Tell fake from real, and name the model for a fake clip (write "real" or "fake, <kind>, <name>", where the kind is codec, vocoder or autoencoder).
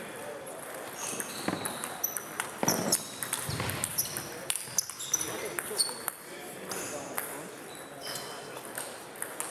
real